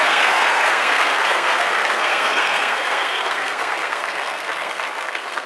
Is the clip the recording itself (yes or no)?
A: no